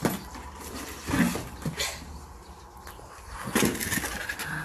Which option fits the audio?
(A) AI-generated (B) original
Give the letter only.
B